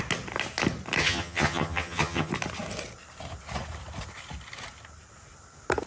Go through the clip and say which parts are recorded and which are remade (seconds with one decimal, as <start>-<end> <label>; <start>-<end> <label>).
0.0-1.0 recorded; 1.0-2.3 remade; 2.3-5.9 recorded